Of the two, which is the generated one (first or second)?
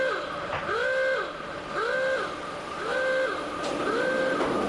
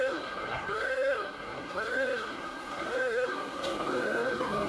second